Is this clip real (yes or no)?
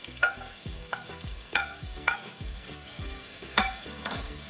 no